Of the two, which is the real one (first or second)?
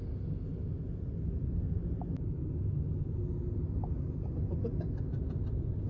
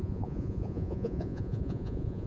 first